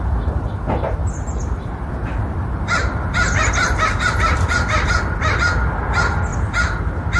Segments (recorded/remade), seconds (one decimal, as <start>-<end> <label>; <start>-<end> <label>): 0.0-1.0 recorded; 1.0-5.0 remade; 5.0-7.2 recorded